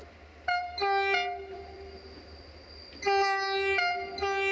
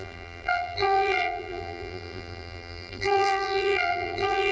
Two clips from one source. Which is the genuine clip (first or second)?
first